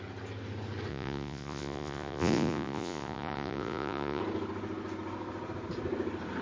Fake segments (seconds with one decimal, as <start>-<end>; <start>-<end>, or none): 0.9-4.2